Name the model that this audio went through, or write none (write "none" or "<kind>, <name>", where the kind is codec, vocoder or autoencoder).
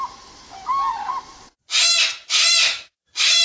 none